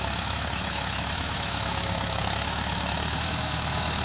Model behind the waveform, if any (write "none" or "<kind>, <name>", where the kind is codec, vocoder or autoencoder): autoencoder, DAC-VAE